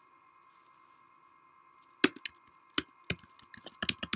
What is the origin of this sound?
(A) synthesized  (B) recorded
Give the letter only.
B